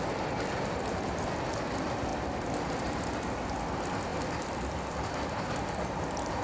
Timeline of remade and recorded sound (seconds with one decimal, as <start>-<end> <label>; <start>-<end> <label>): 0.0-6.4 recorded

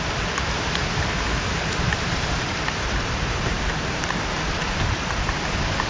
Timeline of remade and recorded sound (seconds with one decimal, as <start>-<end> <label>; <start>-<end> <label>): 0.0-1.5 recorded; 1.5-5.0 remade; 5.0-5.9 recorded

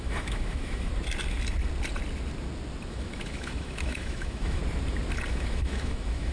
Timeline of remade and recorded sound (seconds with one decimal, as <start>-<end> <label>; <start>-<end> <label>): 0.0-0.9 remade; 0.9-2.9 recorded; 2.9-4.6 remade; 4.6-5.3 recorded; 5.3-6.3 remade

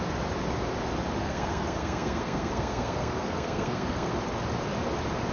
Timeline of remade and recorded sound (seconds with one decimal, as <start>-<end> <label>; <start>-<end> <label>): 0.0-1.2 recorded; 1.2-4.1 remade; 4.1-5.3 recorded

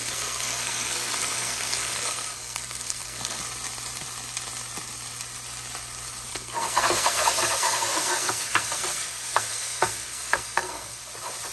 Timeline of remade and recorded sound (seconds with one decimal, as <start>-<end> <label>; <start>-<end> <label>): 0.0-3.4 remade; 3.4-6.3 recorded; 6.3-11.0 remade; 11.0-11.5 recorded

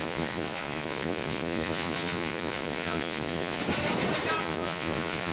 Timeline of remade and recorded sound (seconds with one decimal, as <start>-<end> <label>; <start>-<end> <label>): 0.0-3.6 remade; 3.6-4.4 recorded; 4.4-5.3 remade